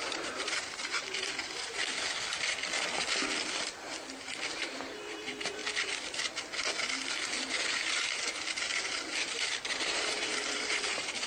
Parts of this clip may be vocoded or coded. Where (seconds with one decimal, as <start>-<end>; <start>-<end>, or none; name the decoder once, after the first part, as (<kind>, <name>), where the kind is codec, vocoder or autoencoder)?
0.0-1.8 (vocoder, BigVGAN v2); 4.6-5.6; 7.9-8.7; 9.7-11.3